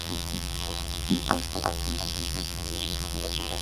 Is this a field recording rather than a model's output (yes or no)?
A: no